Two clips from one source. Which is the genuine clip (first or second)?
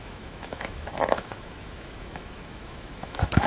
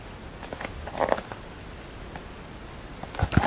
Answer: second